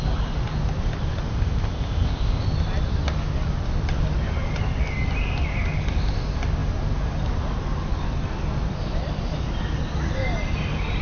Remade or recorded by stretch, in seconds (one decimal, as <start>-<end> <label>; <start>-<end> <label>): 0.0-1.3 recorded; 1.3-2.4 remade; 2.4-11.0 recorded